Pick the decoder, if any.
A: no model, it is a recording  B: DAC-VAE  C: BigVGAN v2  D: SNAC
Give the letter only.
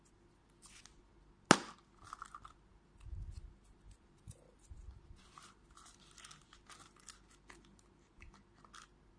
A